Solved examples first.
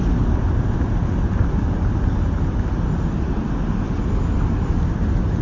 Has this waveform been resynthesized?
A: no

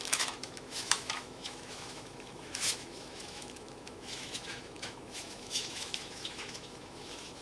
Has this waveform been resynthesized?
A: yes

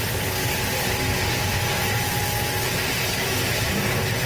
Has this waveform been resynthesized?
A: no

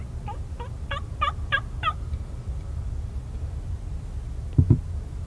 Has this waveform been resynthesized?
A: no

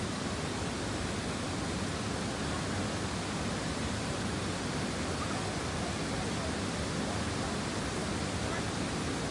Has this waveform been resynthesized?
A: no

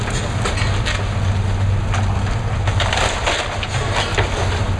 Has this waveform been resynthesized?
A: no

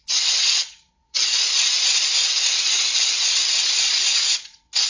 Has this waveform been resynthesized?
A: yes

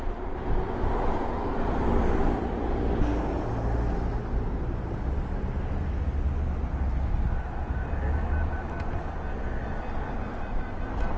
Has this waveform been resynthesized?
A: no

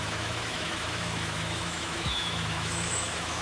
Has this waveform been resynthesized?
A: yes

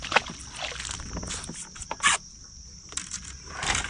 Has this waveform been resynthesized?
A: yes